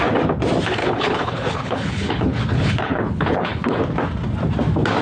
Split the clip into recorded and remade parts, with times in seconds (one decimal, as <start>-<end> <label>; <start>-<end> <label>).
0.0-0.8 recorded; 0.8-3.8 remade; 3.8-5.0 recorded